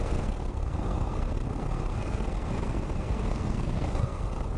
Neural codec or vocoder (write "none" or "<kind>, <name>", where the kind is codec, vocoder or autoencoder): codec, SNAC